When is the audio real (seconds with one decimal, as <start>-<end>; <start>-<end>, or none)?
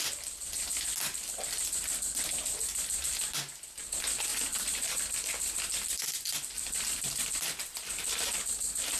0.0-4.3; 8.2-9.0